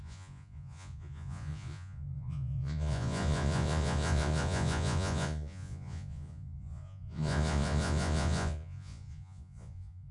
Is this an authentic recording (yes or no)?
no